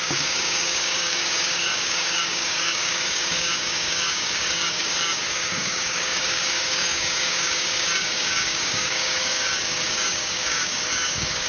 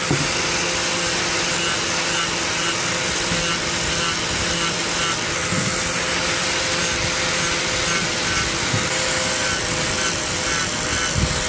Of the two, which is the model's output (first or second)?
first